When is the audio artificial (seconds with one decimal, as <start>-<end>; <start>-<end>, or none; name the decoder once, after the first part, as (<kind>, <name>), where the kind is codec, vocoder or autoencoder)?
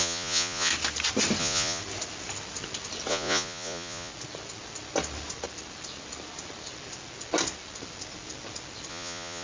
0.0-0.7 (vocoder, Vocos); 1.4-1.8; 3.1-4.1; 8.9-9.4